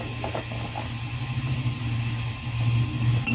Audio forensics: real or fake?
real